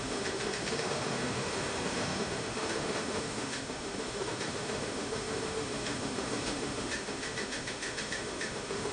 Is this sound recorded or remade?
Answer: remade